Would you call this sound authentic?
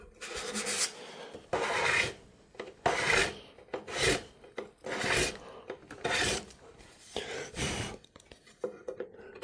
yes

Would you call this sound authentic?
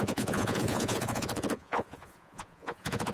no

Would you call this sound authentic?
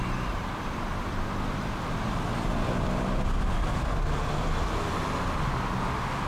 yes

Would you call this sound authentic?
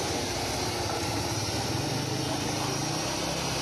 yes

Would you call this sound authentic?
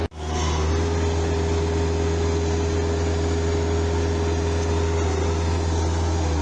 yes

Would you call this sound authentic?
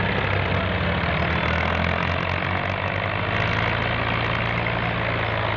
yes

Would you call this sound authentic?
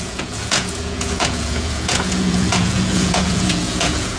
no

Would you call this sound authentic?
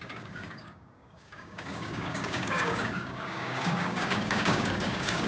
no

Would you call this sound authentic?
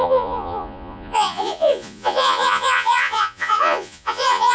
no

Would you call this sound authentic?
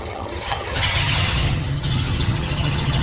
no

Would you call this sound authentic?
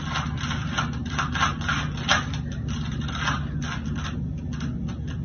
yes